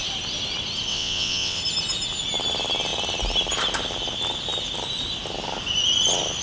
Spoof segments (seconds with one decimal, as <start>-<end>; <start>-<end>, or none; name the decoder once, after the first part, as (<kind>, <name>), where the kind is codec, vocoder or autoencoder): 0.9-1.6 (vocoder, WaveNeXt)